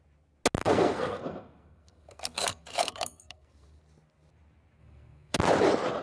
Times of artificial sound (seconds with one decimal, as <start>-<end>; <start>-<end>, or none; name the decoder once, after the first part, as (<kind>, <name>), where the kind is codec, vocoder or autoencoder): 0.6-3.8 (codec, SNAC); 4.8-5.4